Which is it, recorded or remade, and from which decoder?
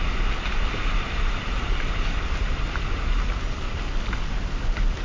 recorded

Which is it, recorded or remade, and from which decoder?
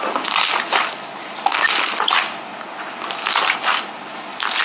recorded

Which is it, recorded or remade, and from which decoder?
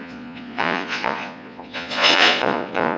remade, vocoder, Vocos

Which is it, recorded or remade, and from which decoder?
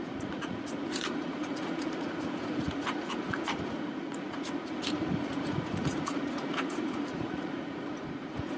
remade, vocoder, Vocos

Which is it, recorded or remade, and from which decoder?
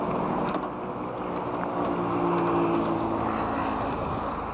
recorded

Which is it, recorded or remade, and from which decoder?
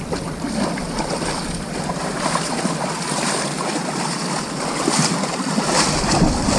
recorded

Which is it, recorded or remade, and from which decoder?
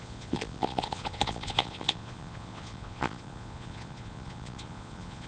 remade, vocoder, Vocos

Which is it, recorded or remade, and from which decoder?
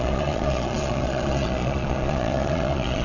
remade, vocoder, Vocos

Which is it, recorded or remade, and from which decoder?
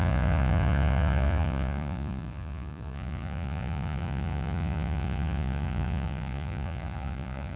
remade, vocoder, Vocos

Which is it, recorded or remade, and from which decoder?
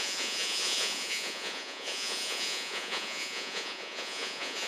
remade, vocoder, Vocos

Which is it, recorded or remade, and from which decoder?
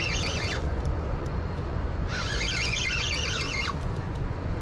remade, vocoder, Vocos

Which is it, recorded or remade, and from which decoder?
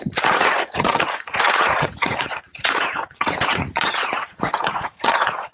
remade, vocoder, Vocos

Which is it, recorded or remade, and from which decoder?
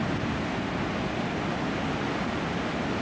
recorded